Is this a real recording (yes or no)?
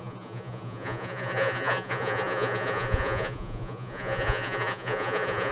no